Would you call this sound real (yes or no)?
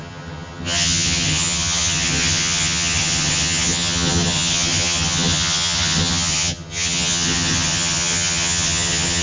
no